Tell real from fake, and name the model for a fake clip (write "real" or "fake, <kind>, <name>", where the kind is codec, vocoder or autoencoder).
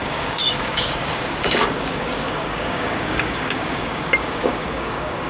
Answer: fake, codec, DAC